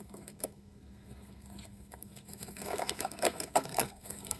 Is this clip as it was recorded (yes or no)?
no